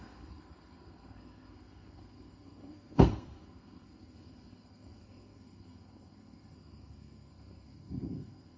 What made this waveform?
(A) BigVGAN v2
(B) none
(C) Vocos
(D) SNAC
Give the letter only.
D